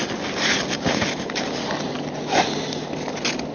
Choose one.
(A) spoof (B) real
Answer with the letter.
B